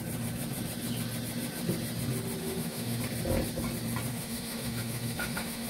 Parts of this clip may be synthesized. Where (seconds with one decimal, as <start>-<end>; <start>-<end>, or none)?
2.4-3.0; 4.1-5.7